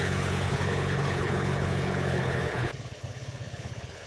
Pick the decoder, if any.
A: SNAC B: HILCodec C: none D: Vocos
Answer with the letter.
B